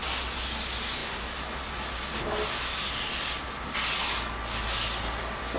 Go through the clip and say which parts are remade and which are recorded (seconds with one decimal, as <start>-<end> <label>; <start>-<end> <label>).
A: 0.0-5.6 recorded